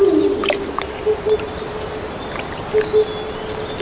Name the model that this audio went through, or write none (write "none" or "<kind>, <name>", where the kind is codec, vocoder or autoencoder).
none